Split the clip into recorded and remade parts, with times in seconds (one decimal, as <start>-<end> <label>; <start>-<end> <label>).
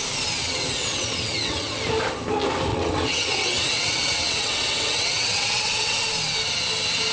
0.0-0.4 recorded; 0.4-1.7 remade; 1.7-2.7 recorded; 2.7-6.0 remade; 6.0-7.1 recorded